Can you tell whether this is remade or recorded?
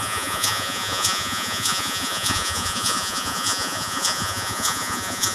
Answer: remade